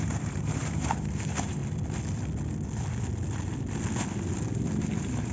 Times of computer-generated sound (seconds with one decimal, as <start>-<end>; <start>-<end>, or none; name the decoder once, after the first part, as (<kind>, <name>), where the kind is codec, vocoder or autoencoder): 0.0-1.6 (vocoder, BigVGAN v2); 4.8-5.3

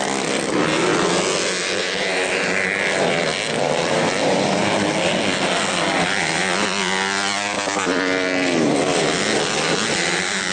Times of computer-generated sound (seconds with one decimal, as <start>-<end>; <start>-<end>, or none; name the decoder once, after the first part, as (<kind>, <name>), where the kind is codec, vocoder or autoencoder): none